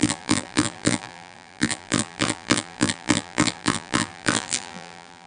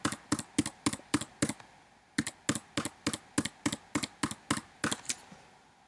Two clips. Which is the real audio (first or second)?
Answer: second